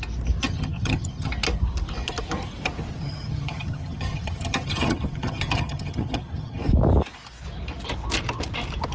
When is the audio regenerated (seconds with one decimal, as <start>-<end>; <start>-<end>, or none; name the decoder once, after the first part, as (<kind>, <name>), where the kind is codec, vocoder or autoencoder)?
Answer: 0.5-1.3 (vocoder, HiFi-GAN); 2.9-6.6

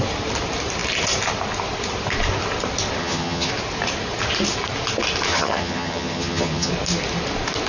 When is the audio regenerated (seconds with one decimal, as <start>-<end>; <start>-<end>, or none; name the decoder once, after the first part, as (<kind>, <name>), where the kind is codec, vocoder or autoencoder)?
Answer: 3.0-3.5 (vocoder, HiFi-GAN); 5.3-6.7

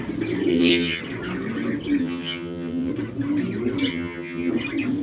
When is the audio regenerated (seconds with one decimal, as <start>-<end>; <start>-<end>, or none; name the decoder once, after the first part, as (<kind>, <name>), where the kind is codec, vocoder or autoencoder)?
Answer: 0.5-1.0 (vocoder, HiFi-GAN); 2.0-2.9; 3.9-4.5

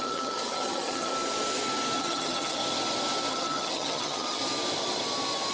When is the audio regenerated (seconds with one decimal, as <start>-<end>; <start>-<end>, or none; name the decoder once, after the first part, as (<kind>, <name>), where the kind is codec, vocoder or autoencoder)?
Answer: 0.0-1.1 (vocoder, HiFi-GAN); 2.0-2.6; 3.3-4.4

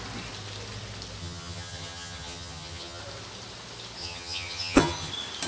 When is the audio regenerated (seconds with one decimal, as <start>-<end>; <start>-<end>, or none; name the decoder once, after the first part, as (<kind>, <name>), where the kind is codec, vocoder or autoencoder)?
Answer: 1.2-3.0 (vocoder, HiFi-GAN); 4.0-5.1

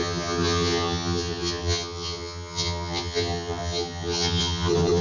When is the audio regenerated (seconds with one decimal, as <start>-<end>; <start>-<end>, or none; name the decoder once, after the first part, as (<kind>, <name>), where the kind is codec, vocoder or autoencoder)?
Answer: 0.0-5.0 (vocoder, HiFi-GAN)

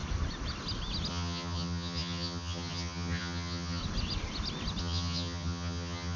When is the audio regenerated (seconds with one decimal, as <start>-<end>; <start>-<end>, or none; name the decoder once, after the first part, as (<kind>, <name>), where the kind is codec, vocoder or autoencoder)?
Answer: 1.1-3.8 (vocoder, HiFi-GAN); 4.8-6.2

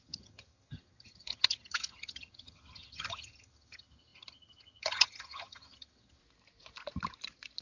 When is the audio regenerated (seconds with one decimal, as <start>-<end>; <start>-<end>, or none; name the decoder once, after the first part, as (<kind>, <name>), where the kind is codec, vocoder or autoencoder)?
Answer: 0.0-6.2 (vocoder, HiFi-GAN)